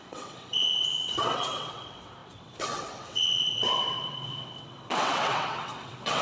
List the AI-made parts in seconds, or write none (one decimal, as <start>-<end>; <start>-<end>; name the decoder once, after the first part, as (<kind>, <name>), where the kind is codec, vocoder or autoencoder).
0.0-6.2 (vocoder, WaveNeXt)